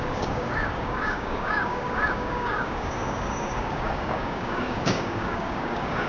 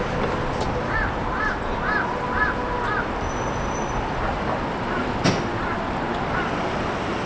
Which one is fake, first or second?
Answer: first